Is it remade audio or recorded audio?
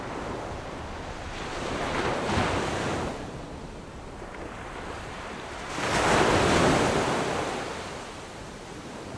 recorded